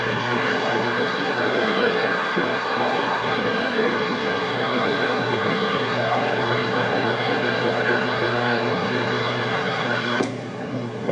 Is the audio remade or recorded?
remade